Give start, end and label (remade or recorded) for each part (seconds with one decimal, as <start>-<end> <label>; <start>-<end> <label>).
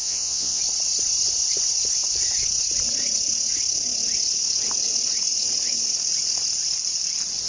0.0-0.6 remade; 0.6-7.5 recorded